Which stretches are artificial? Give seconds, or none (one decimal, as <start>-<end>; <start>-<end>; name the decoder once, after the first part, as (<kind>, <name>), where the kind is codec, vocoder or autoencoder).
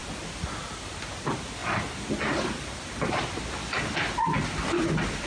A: none